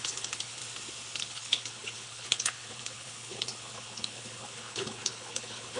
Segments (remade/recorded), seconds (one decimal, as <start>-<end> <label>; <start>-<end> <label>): 0.0-0.6 remade; 0.6-1.2 recorded; 1.2-5.8 remade

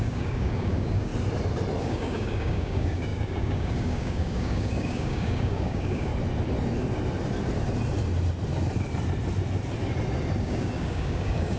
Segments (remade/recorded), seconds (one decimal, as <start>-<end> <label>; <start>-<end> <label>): 0.0-1.1 remade; 1.1-1.8 recorded; 1.8-6.1 remade; 6.1-10.4 recorded; 10.4-11.6 remade

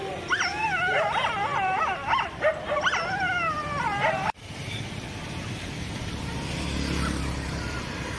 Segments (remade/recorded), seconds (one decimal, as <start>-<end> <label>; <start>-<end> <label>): 0.0-1.5 recorded; 1.5-6.1 remade; 6.1-8.2 recorded

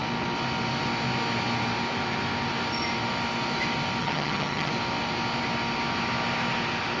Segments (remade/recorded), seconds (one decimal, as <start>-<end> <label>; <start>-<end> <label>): 0.0-4.0 recorded; 4.0-4.7 remade; 4.7-7.0 recorded

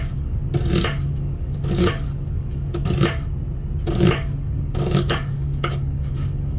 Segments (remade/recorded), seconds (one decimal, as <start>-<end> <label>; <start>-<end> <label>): 0.0-0.4 remade; 0.4-1.0 recorded; 1.0-2.8 remade; 2.8-3.9 recorded; 3.9-6.6 remade

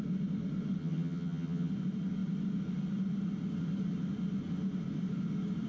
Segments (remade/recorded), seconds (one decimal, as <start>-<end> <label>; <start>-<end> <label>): 0.0-0.8 recorded; 0.8-1.7 remade; 1.7-5.7 recorded